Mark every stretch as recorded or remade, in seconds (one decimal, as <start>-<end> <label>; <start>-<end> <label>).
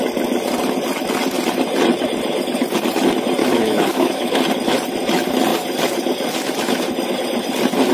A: 0.0-3.4 recorded; 3.4-4.4 remade; 4.4-7.9 recorded